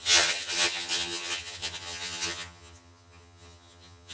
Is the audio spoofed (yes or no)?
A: yes